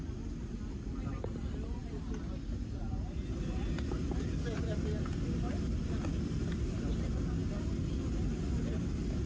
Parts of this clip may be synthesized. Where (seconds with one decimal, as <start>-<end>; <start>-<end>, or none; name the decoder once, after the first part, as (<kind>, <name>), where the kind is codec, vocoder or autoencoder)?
none